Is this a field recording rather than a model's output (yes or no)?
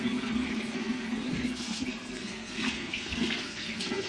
no